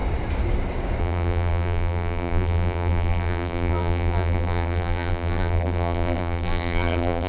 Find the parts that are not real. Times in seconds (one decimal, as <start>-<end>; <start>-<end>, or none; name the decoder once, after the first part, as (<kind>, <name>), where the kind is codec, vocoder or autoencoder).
1.0-7.3 (vocoder, BigVGAN v2)